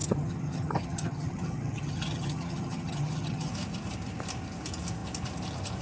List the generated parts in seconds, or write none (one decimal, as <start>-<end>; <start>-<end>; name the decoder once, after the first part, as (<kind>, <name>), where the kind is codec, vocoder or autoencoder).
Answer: 0.0-3.5 (vocoder, HiFi-GAN)